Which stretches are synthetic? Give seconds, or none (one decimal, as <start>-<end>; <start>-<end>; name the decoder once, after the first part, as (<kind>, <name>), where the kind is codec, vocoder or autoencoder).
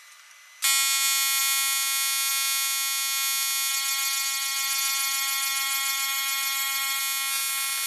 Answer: 3.7-7.0 (autoencoder, DAC-VAE)